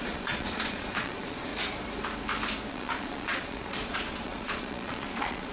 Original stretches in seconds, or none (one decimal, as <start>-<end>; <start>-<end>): 1.5-2.7

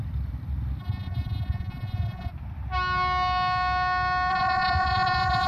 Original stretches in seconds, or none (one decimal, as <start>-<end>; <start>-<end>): 0.0-0.8; 2.3-4.3

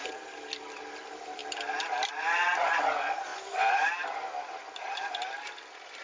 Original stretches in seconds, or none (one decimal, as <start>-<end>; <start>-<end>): 0.0-6.0

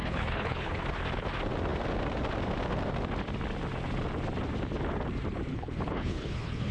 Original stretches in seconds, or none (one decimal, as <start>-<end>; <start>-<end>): 0.8-5.5